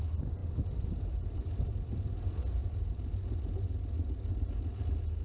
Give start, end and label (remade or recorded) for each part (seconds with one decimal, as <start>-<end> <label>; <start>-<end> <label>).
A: 0.0-5.2 recorded